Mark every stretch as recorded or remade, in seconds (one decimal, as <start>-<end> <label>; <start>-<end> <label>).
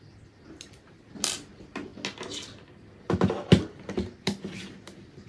0.0-5.3 recorded